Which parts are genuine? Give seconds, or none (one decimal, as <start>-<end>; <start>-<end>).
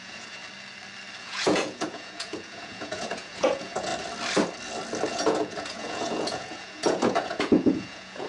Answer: 0.4-1.2; 3.9-5.1